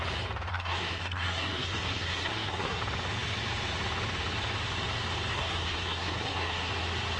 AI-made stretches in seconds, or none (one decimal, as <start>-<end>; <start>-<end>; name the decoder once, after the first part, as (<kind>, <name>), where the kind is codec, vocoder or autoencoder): 0.5-2.8 (codec, SNAC); 5.3-6.7